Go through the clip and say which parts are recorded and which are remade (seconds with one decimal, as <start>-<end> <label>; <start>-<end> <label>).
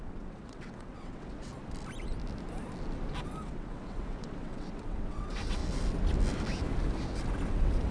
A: 0.0-1.5 remade; 1.5-3.4 recorded; 3.4-5.6 remade; 5.6-7.5 recorded; 7.5-7.9 remade